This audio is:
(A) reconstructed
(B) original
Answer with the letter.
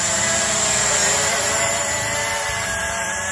A